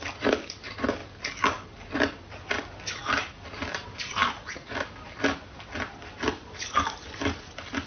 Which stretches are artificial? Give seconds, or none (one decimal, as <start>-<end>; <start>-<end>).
0.0-1.0; 1.9-4.2